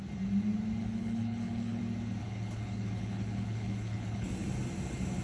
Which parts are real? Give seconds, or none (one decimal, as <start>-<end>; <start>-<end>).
0.0-0.8; 1.8-2.2; 4.3-5.2